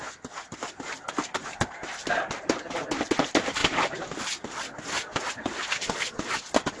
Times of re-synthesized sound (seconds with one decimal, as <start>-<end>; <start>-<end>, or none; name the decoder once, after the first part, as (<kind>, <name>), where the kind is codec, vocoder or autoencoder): none